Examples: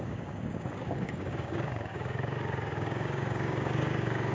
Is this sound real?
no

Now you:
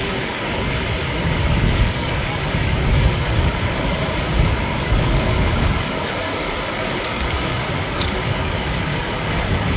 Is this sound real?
no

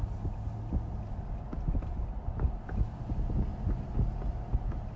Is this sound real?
yes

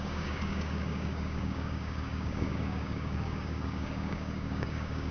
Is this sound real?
no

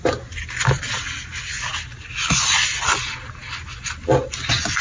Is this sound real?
yes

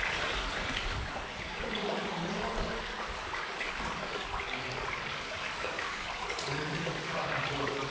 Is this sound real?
no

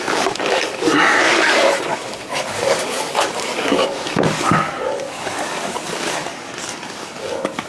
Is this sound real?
no